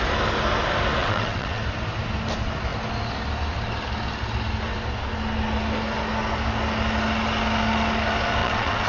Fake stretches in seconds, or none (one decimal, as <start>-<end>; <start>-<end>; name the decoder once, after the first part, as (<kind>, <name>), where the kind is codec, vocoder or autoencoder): 1.0-1.6 (vocoder, WaveNeXt); 8.4-8.9